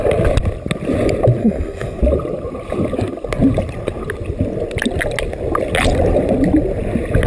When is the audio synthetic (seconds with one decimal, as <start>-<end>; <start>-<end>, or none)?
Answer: 1.4-2.0